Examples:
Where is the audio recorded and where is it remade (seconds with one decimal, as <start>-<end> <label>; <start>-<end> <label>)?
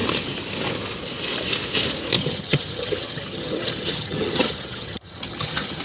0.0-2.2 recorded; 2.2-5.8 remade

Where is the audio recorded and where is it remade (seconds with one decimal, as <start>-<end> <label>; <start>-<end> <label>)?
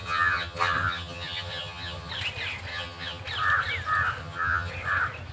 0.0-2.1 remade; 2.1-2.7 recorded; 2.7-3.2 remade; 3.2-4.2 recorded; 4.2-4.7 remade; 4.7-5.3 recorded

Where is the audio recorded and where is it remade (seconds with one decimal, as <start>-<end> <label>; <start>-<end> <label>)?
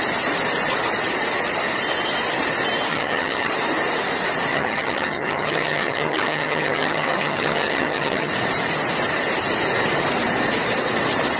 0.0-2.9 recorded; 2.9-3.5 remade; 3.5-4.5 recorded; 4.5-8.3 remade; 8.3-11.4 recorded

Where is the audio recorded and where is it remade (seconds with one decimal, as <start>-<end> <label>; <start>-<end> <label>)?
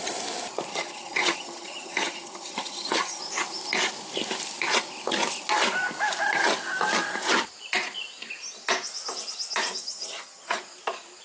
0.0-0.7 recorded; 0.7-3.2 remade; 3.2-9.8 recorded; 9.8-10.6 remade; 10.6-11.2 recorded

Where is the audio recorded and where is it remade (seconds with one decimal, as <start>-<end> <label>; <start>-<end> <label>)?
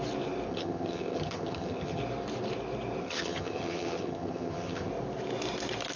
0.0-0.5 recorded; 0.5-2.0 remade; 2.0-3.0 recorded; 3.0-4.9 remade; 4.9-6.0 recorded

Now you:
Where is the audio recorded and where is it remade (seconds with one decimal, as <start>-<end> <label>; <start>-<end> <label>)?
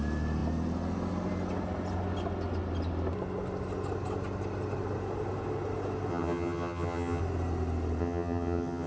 0.0-6.1 recorded; 6.1-7.2 remade; 7.2-8.0 recorded; 8.0-8.9 remade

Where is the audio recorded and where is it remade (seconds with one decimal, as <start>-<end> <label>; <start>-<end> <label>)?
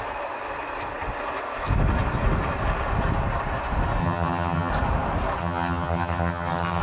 0.0-4.0 recorded; 4.0-4.7 remade; 4.7-5.4 recorded; 5.4-6.8 remade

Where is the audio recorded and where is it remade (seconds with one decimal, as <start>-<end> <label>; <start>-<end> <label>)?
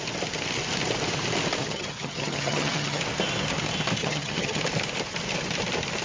0.0-1.6 recorded; 1.6-3.0 remade; 3.0-4.0 recorded; 4.0-4.6 remade; 4.6-6.0 recorded